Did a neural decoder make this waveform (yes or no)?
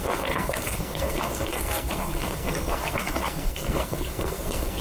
yes